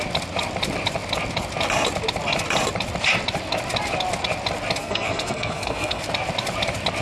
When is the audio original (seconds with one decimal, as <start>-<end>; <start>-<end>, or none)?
0.0-4.8; 6.0-7.0